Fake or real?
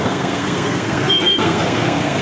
fake